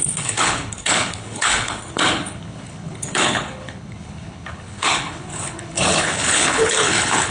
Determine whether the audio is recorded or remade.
remade